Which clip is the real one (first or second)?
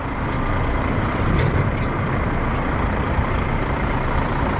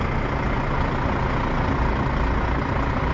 second